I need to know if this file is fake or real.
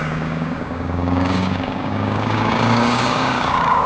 fake